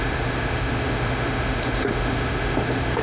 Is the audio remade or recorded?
remade